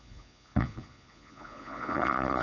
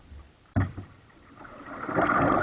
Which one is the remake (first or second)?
first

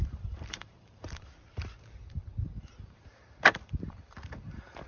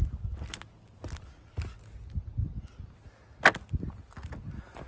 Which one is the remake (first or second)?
first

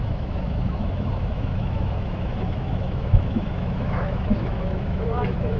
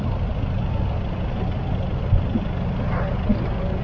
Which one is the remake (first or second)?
first